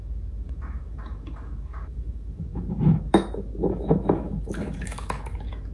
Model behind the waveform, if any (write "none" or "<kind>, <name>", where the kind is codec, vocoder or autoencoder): autoencoder, DAC-VAE